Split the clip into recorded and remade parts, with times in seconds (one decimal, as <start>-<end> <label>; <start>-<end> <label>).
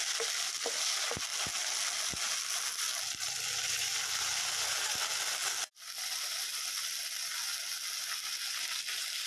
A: 0.0-9.3 recorded